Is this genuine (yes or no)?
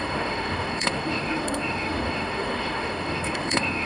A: no